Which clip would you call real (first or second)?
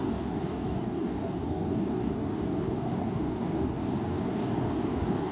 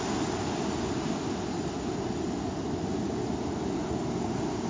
second